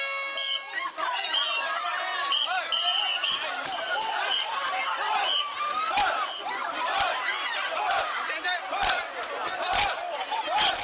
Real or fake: real